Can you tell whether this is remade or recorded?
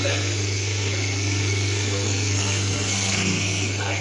remade